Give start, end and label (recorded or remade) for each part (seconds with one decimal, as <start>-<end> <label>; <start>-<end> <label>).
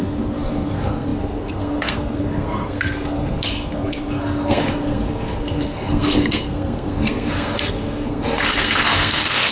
0.0-9.5 remade